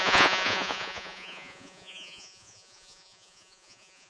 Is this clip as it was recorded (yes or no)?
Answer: no